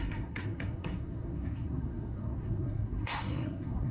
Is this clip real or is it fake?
fake